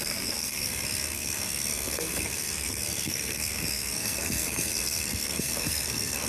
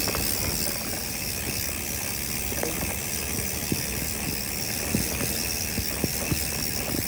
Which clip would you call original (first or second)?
second